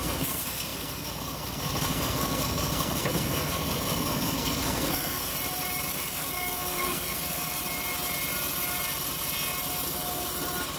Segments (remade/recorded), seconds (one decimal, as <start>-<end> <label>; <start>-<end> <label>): 0.0-5.3 remade; 5.3-5.9 recorded; 5.9-7.6 remade; 7.6-10.8 recorded